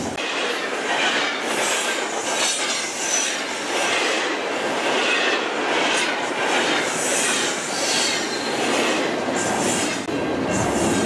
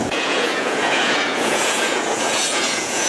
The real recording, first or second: first